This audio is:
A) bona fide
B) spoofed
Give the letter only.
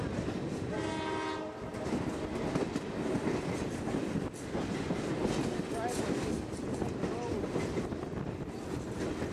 A